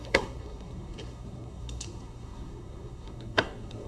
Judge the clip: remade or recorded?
remade